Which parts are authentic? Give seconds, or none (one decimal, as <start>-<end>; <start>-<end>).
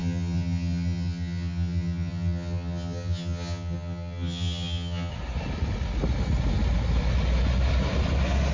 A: 5.1-8.5